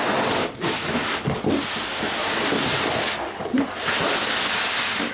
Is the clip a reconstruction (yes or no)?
no